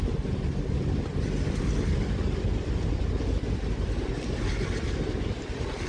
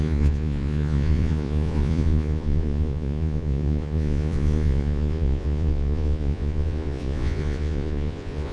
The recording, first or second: first